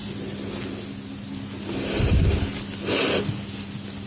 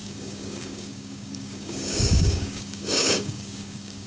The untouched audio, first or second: first